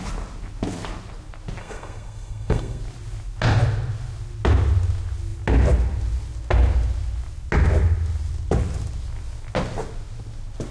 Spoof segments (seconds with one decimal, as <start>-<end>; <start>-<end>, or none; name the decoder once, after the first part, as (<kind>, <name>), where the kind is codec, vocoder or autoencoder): 1.6-2.8 (codec, SNAC)